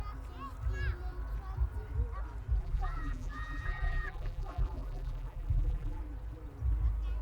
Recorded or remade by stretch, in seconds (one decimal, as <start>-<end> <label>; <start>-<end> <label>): 0.0-2.6 recorded; 2.6-6.0 remade; 6.0-7.2 recorded